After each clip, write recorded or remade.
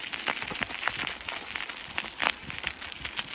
recorded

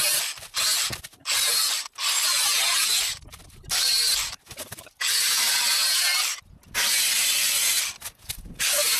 recorded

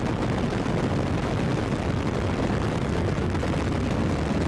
recorded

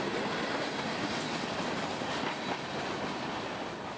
recorded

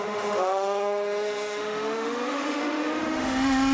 remade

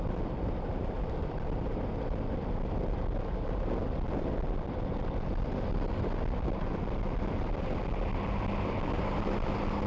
recorded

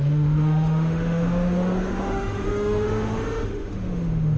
remade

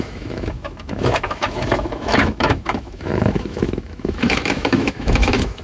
remade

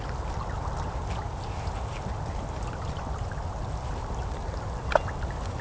recorded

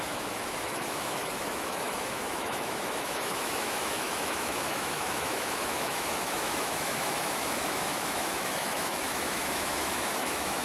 remade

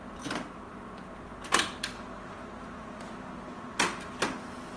recorded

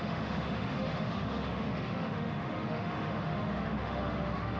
remade